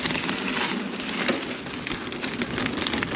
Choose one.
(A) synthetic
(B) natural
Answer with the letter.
B